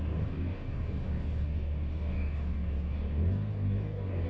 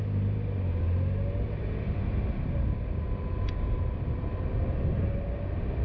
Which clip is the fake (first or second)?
first